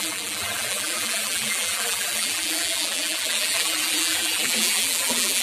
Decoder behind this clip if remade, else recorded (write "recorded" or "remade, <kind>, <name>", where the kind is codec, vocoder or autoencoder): remade, vocoder, BigVGAN v2